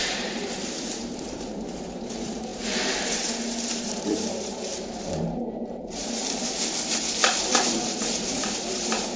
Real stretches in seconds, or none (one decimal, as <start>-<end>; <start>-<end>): 6.2-8.0